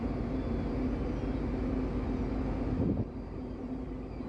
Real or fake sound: real